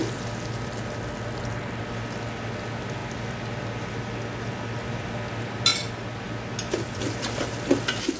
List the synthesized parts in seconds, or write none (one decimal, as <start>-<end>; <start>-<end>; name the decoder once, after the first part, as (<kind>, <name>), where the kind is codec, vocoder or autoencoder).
none